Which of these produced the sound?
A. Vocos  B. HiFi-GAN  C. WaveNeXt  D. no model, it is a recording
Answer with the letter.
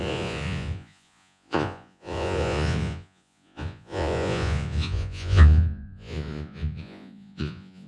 A